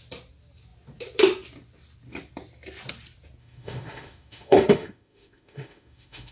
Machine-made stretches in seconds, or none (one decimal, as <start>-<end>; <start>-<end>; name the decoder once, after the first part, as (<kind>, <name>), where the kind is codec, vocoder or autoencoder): 3.4-6.3 (autoencoder, DAC-VAE)